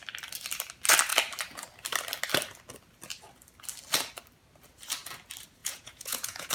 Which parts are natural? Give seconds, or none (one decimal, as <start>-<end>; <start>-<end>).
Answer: 0.0-5.6